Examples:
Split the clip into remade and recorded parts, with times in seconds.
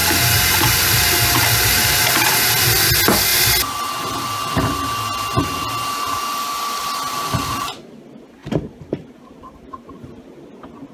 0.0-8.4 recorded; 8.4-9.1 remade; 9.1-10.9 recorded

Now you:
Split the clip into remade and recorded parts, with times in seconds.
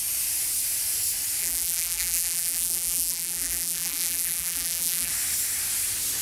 0.0-1.4 recorded; 1.4-5.1 remade; 5.1-6.2 recorded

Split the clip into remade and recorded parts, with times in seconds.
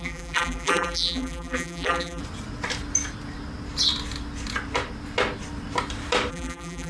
0.0-2.2 remade; 2.2-6.3 recorded; 6.3-6.9 remade